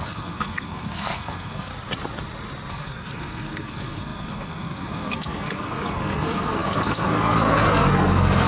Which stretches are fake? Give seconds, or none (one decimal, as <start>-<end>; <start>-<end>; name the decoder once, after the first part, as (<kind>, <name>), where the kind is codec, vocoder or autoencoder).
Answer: 0.0-1.7 (codec, SNAC); 2.7-8.5